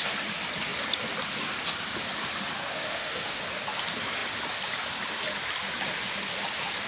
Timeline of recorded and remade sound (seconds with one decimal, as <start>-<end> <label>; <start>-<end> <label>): 0.0-2.6 recorded; 2.6-3.4 remade; 3.4-6.9 recorded